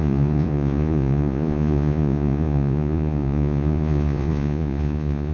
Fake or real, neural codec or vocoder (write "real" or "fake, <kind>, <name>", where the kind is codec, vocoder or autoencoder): fake, vocoder, Vocos